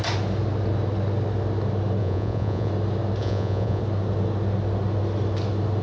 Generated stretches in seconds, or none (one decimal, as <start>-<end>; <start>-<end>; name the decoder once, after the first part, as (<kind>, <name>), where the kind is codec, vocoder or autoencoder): 2.0-2.7 (vocoder, Vocos); 3.2-3.8